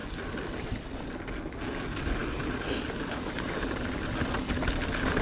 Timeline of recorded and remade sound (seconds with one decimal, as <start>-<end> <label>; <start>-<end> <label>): 0.0-5.2 recorded